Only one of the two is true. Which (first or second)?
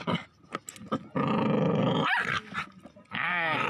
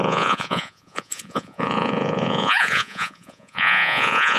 first